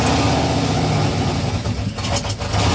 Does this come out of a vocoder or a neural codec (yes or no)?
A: no